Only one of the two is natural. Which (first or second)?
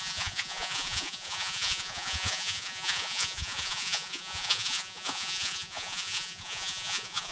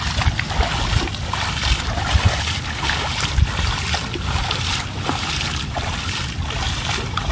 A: second